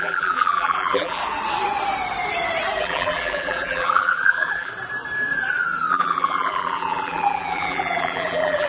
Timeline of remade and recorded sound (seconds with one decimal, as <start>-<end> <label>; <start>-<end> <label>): 0.0-1.2 remade; 1.2-2.8 recorded; 2.8-4.7 remade; 4.7-5.9 recorded; 5.9-8.7 remade